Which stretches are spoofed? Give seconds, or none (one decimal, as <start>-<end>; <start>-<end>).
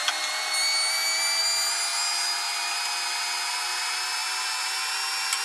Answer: none